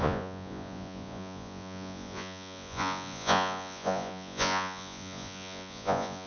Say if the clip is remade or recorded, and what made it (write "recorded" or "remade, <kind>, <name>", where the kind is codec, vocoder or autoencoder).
remade, vocoder, Vocos